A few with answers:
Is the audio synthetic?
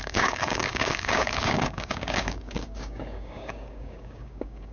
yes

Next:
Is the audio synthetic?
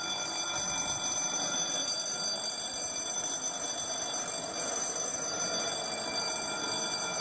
no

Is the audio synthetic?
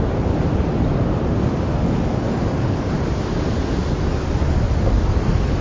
no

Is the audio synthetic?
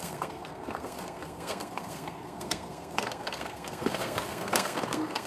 yes